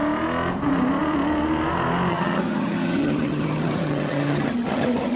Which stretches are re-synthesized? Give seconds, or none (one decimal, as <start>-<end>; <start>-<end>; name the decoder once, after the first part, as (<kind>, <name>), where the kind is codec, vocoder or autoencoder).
2.1-5.2 (vocoder, HiFi-GAN)